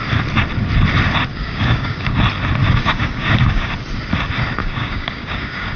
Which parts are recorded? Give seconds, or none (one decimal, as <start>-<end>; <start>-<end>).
0.0-1.3; 2.2-2.6; 3.7-4.6